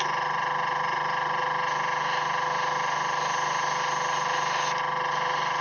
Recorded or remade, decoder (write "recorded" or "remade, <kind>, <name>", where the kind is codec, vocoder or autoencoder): recorded